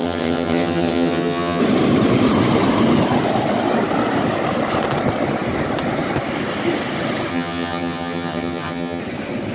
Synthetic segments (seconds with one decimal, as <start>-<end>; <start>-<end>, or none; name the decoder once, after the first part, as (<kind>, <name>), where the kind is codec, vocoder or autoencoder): 0.0-1.6 (vocoder, HiFi-GAN); 7.3-9.0